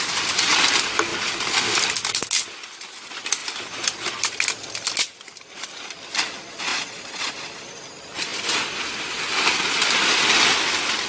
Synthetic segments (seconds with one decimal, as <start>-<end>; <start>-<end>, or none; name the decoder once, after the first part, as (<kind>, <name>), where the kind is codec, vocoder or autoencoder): 6.7-7.3 (vocoder, Vocos)